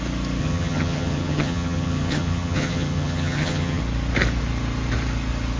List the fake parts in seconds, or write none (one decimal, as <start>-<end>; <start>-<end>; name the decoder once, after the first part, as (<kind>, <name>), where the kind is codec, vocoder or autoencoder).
0.4-3.8 (vocoder, HiFi-GAN)